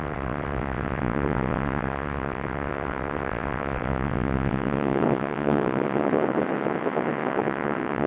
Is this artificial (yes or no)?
yes